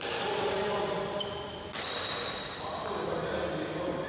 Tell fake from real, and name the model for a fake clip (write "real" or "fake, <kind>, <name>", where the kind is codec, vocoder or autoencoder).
real